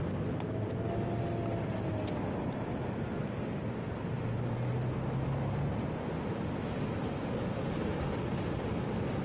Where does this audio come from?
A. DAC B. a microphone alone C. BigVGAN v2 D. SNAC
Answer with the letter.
B